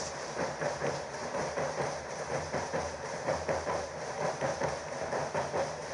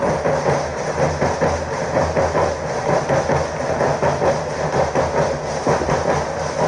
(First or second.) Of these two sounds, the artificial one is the first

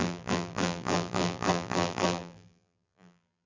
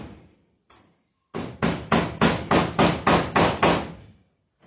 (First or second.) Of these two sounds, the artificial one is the first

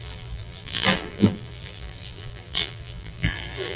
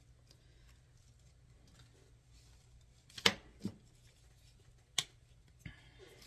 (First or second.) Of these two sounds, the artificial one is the first